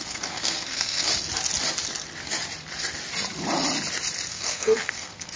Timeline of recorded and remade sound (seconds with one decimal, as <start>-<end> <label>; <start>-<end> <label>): 0.0-1.1 remade; 1.1-4.3 recorded; 4.3-5.4 remade